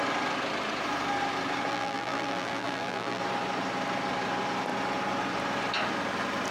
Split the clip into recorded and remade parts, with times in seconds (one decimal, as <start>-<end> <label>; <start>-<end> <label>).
0.0-1.7 recorded; 1.7-3.2 remade; 3.2-6.5 recorded